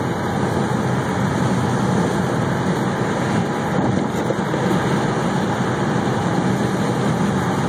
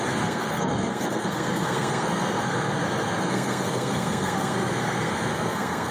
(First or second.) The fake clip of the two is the second